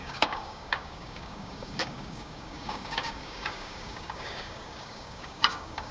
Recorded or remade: remade